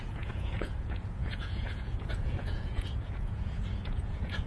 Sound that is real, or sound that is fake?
fake